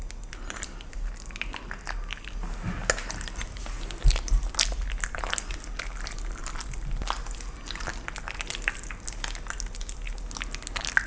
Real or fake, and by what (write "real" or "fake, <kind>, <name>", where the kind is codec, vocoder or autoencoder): real